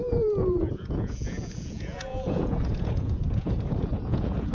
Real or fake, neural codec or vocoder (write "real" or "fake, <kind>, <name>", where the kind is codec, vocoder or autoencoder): fake, vocoder, Vocos